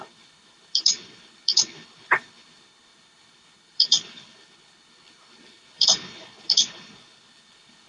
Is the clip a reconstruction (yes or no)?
yes